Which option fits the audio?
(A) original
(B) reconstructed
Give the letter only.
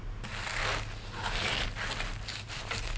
A